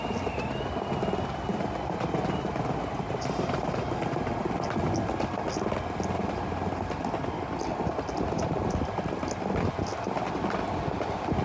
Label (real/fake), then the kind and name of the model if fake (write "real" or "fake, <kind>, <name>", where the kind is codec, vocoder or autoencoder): real